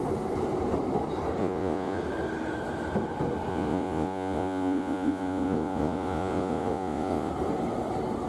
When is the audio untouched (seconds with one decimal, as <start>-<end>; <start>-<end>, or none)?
0.0-1.4; 2.0-3.5; 7.3-8.3